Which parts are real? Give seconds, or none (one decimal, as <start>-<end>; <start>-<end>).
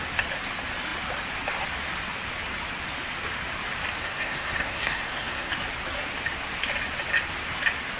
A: 0.0-4.0; 5.5-8.0